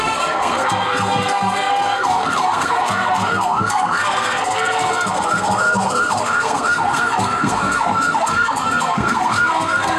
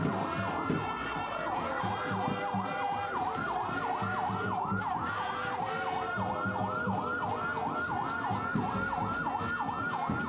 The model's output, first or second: first